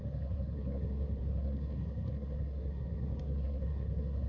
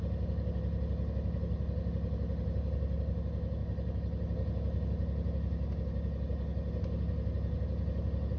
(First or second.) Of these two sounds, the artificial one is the first